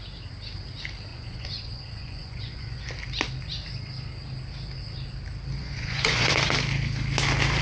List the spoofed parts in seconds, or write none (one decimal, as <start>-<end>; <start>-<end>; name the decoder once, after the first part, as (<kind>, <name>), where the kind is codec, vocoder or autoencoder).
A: 1.1-2.9 (vocoder, Vocos); 5.6-6.3

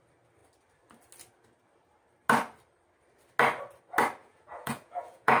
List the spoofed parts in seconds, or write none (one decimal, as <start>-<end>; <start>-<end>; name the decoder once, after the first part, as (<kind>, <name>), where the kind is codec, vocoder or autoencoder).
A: 4.2-5.4 (vocoder, Vocos)

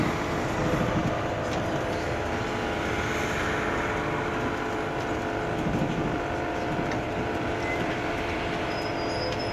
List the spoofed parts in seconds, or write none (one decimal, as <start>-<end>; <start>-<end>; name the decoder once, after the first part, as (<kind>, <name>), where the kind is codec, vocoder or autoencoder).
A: none

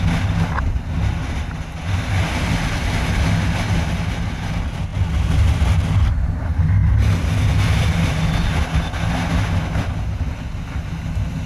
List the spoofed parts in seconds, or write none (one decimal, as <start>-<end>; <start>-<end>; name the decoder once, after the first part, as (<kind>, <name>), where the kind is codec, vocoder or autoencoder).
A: 6.8-7.3 (vocoder, BigVGAN v2)

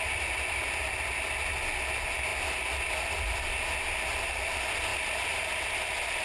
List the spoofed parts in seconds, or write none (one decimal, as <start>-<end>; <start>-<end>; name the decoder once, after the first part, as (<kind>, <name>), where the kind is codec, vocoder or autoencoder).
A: 4.9-5.4 (vocoder, BigVGAN v2)